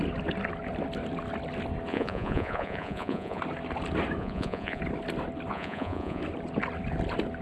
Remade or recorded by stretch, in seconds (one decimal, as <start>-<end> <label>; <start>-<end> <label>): 0.0-1.9 recorded; 1.9-3.4 remade; 3.4-4.2 recorded; 4.2-4.8 remade; 4.8-5.5 recorded; 5.5-6.2 remade; 6.2-7.4 recorded